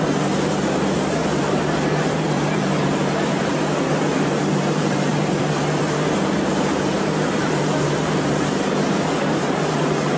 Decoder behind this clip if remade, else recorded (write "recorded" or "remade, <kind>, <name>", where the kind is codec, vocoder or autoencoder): remade, vocoder, BigVGAN v2